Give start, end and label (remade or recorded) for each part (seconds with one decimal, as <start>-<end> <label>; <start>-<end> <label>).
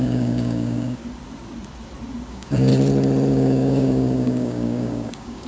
0.0-1.0 remade; 1.0-2.3 recorded; 2.3-2.7 remade; 2.7-3.3 recorded; 3.3-5.5 remade